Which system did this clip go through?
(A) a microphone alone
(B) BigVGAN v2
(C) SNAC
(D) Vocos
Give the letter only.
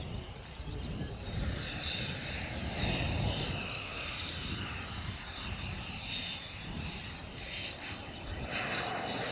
B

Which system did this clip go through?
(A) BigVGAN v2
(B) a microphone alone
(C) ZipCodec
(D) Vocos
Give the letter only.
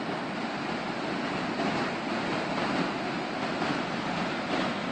A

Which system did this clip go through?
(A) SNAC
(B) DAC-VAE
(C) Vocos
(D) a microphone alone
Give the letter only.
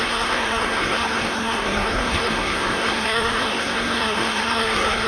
A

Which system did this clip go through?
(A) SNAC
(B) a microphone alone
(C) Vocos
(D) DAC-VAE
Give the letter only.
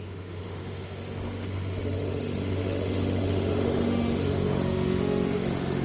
D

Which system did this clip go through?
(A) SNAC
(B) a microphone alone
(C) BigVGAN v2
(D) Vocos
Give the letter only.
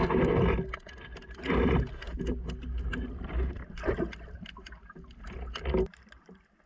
B